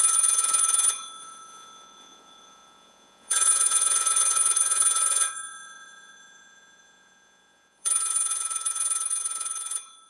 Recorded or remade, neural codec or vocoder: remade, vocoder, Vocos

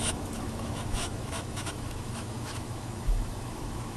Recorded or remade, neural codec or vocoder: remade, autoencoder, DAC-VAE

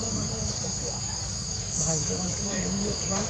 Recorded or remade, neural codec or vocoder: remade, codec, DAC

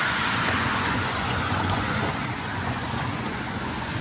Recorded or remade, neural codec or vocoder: remade, vocoder, Vocos